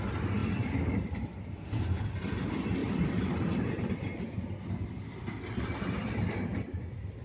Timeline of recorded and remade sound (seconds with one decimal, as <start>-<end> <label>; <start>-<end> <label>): 0.0-2.8 recorded; 2.8-4.2 remade; 4.2-7.2 recorded